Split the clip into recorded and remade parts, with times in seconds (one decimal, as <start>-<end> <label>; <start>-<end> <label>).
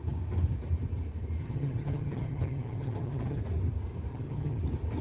0.0-1.4 recorded; 1.4-3.4 remade; 3.4-4.1 recorded; 4.1-4.6 remade; 4.6-5.0 recorded